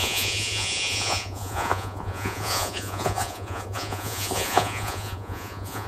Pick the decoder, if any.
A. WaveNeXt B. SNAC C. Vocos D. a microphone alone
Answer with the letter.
C